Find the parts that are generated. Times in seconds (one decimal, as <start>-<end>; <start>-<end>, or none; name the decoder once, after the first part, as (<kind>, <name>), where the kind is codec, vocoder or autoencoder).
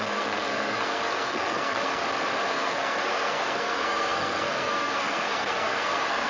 0.0-2.0 (codec, SNAC); 2.5-6.3